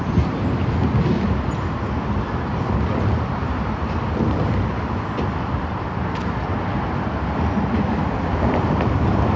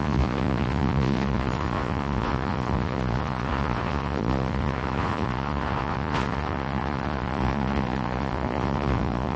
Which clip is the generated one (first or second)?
second